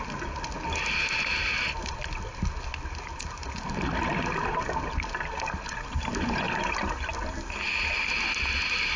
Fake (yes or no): no